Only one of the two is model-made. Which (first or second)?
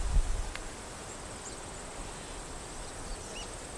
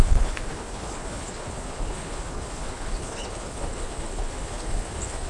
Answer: second